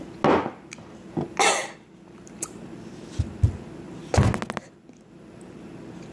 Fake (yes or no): no